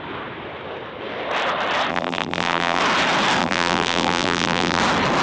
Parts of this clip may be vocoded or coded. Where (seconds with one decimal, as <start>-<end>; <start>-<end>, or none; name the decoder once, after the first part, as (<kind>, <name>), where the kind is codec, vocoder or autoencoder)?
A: 1.9-2.8 (vocoder, BigVGAN v2); 3.4-4.8